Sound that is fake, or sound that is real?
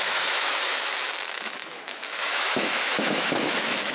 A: fake